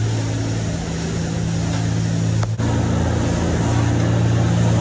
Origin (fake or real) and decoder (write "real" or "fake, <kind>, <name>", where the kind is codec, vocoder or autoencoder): real